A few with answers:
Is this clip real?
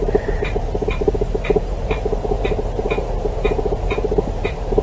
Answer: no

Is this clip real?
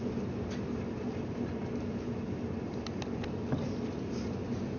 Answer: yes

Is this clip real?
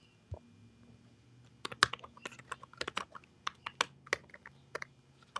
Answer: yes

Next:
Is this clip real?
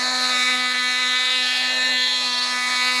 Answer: no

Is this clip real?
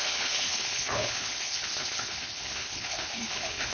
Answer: no